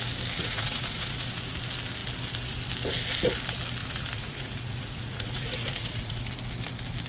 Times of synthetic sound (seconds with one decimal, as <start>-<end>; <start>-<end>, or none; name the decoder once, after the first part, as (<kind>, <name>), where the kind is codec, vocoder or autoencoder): 0.4-1.4 (vocoder, Vocos); 3.8-6.2